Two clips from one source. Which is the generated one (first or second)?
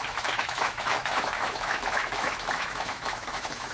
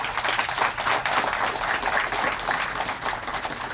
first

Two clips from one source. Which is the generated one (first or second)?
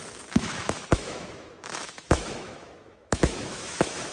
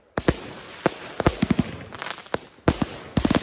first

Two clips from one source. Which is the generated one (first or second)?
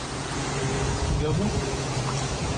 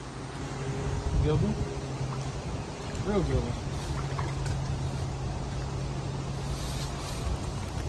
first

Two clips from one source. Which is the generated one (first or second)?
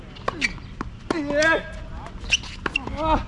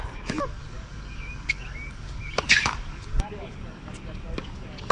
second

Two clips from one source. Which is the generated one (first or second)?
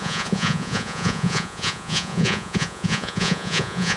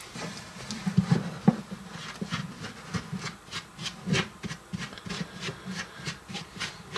first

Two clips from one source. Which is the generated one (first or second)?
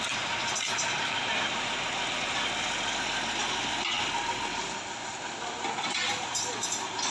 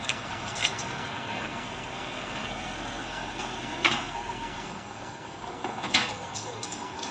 second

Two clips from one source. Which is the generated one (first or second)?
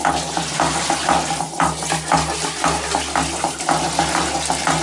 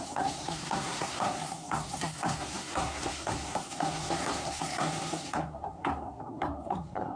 second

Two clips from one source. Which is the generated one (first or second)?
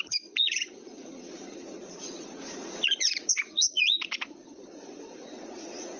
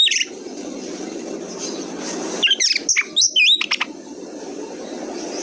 first